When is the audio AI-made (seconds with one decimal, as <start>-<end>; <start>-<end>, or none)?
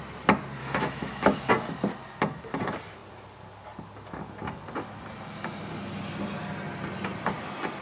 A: 0.6-1.5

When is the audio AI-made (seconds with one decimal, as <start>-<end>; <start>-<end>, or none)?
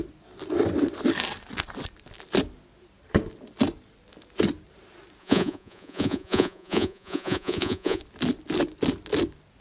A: 5.2-8.0